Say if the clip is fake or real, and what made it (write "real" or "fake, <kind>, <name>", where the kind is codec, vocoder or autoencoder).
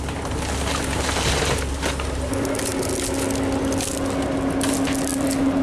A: real